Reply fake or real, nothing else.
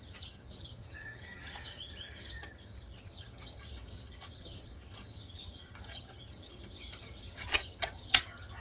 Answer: fake